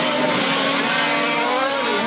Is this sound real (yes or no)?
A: yes